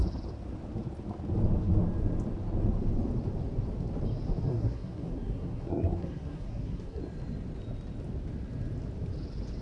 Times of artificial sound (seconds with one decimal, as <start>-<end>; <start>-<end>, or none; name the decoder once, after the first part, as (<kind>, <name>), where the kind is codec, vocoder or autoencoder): 4.5-7.0 (codec, SNAC)